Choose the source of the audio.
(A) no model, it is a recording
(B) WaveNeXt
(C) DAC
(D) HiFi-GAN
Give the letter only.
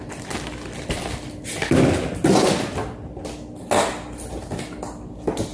A